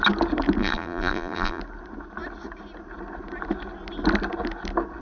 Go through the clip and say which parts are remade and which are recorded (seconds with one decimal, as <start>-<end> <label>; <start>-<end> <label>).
0.0-0.6 recorded; 0.6-1.6 remade; 1.6-5.0 recorded